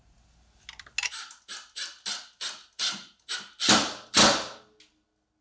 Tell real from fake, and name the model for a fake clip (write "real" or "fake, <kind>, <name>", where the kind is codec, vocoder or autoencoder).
real